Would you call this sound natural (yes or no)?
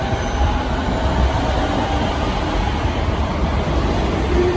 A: yes